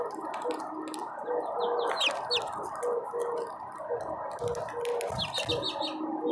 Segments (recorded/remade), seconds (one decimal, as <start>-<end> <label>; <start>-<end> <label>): 0.0-6.3 recorded